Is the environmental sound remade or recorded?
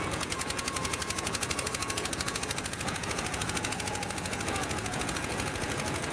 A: remade